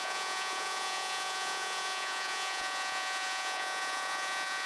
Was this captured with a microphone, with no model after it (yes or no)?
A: no